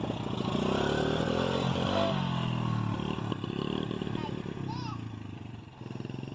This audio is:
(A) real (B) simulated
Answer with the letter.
A